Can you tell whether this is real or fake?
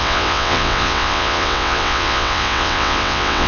fake